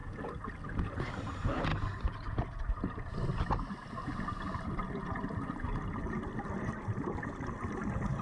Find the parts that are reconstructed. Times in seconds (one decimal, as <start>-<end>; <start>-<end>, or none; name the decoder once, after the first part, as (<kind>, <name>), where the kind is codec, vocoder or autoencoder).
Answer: 1.1-1.7 (vocoder, BigVGAN v2); 6.6-8.2